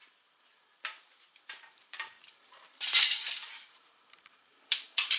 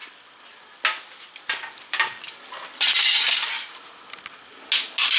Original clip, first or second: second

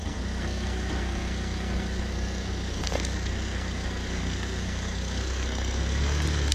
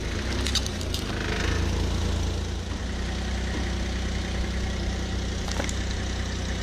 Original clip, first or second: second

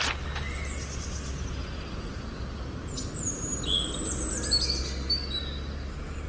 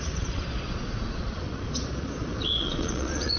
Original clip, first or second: first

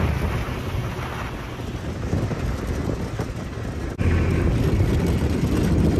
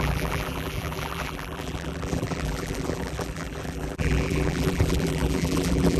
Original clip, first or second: first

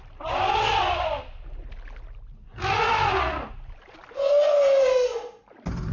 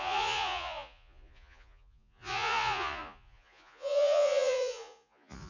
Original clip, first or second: first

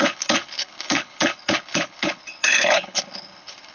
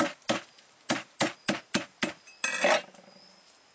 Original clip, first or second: second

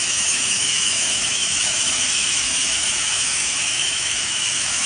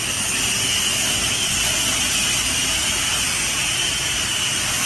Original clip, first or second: second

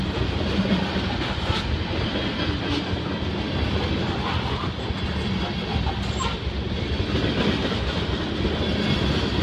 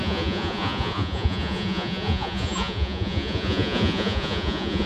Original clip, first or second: first